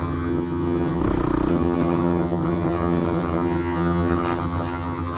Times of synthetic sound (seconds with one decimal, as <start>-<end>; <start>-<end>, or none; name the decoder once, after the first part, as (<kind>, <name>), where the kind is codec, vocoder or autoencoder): 0.0-1.0 (vocoder, HiFi-GAN); 1.5-5.2